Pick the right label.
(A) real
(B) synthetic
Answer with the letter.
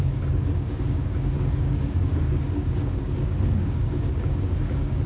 B